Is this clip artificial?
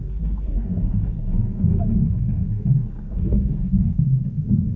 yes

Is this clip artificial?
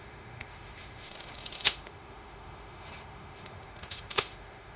yes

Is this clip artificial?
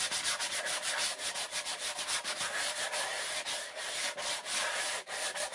yes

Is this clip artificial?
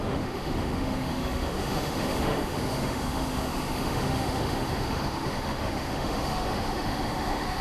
yes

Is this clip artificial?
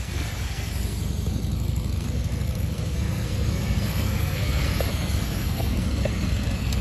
yes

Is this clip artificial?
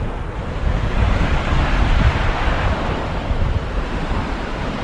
yes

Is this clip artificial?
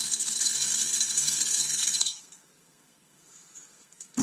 yes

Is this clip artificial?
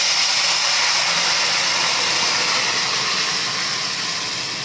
no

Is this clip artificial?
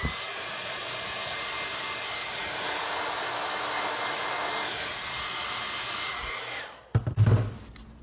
no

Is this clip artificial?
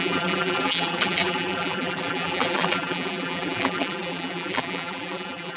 yes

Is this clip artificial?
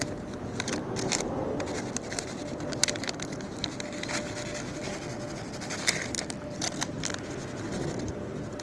no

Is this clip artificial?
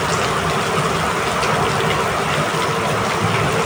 no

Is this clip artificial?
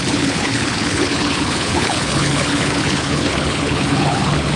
yes